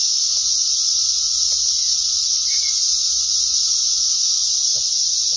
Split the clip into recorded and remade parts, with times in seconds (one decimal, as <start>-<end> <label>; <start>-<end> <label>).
0.0-0.7 recorded; 0.7-3.8 remade; 3.8-4.7 recorded; 4.7-5.4 remade